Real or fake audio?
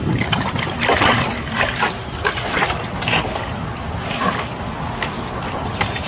real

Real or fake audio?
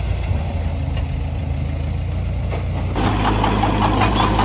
real